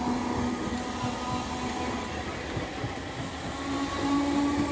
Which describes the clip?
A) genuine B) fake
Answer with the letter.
A